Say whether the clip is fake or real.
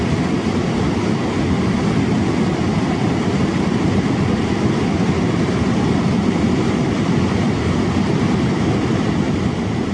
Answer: real